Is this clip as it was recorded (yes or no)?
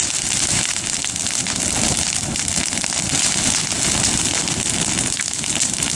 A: yes